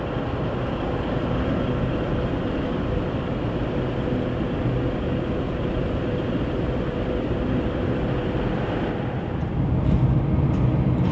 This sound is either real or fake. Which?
real